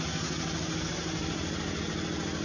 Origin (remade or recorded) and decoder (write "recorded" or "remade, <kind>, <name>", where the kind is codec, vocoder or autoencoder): recorded